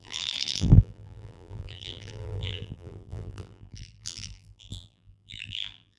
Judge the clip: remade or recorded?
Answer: remade